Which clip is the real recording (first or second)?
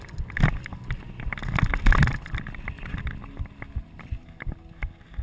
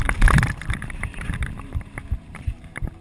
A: first